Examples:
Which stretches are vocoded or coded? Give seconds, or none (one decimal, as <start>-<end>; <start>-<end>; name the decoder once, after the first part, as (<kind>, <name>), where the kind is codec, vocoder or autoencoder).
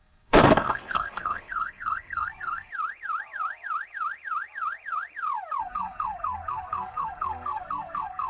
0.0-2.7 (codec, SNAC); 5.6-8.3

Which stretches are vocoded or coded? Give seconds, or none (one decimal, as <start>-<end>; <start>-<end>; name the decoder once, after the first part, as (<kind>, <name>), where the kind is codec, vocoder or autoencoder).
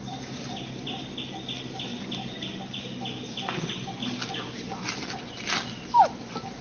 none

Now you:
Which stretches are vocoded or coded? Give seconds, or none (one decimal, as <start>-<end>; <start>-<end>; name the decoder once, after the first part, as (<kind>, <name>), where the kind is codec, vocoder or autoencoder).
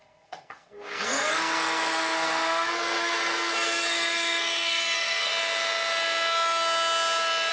0.0-5.3 (codec, SNAC)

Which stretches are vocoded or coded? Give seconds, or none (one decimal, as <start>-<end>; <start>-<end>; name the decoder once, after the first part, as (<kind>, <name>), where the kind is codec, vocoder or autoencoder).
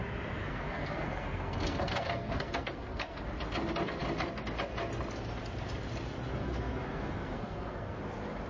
0.5-3.2 (codec, SNAC); 6.4-8.0